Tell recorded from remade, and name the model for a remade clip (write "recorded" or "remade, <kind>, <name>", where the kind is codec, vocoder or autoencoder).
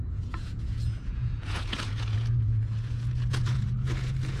remade, vocoder, Vocos